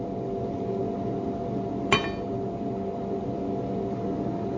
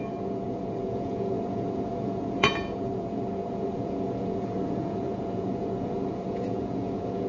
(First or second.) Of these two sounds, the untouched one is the first